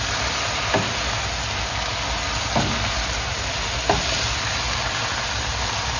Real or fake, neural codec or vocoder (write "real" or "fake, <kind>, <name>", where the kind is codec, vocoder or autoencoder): real